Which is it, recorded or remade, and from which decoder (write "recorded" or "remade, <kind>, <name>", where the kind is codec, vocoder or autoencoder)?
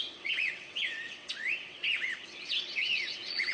remade, vocoder, WaveNeXt